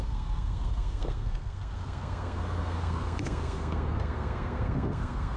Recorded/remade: remade